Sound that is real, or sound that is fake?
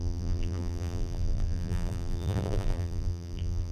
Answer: fake